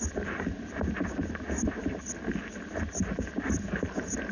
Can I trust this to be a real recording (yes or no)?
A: yes